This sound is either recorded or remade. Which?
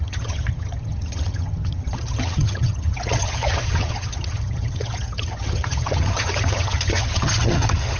remade